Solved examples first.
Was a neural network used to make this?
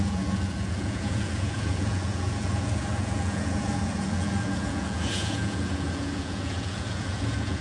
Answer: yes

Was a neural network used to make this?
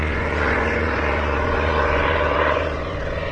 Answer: yes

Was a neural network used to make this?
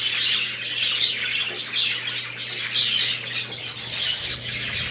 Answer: no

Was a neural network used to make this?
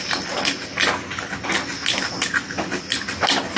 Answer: no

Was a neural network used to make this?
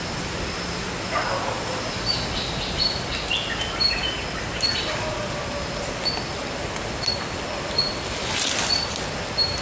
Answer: no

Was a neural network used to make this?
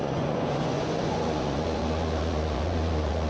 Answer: yes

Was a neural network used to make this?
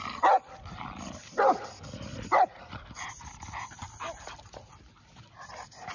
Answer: no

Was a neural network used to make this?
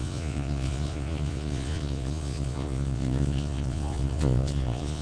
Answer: yes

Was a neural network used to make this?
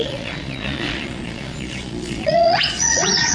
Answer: yes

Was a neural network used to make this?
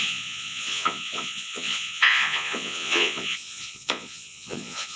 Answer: yes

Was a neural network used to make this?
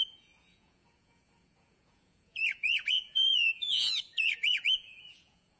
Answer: yes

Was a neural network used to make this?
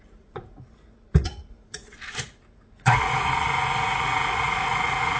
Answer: yes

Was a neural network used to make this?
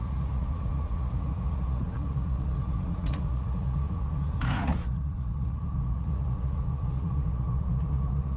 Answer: yes